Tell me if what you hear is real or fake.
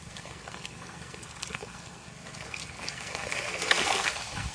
fake